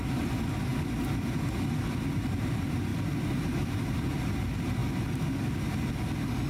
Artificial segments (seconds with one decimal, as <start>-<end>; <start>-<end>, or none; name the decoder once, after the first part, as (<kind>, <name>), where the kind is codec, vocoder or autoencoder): none